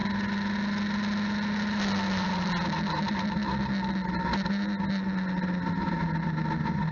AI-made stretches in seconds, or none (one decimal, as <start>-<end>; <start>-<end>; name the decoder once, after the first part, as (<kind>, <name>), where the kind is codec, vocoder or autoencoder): none

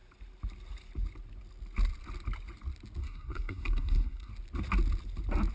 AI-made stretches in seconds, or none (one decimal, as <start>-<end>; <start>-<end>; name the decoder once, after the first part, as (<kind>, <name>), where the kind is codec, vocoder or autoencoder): 3.0-4.3 (codec, SNAC)

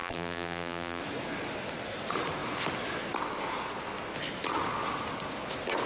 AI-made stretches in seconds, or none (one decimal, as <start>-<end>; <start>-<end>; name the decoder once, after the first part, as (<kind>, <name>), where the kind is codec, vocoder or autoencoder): 0.0-1.0 (vocoder, BigVGAN v2)

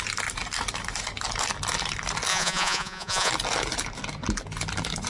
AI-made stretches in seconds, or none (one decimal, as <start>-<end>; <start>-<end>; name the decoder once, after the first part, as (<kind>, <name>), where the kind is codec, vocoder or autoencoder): 2.3-3.3 (vocoder, Vocos)